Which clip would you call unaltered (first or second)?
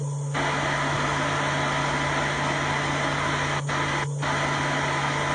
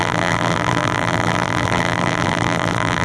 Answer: first